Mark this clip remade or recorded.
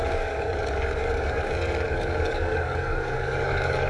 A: remade